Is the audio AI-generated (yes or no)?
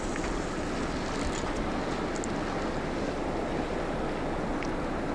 no